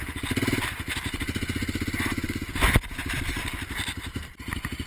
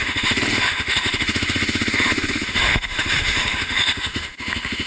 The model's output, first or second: second